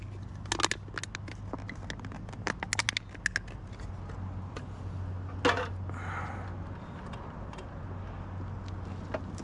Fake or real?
real